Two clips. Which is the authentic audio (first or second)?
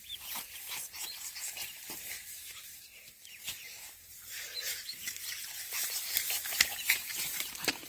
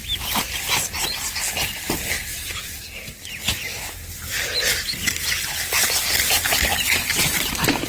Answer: second